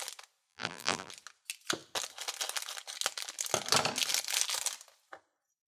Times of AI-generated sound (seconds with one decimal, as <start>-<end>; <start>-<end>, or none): 0.5-1.1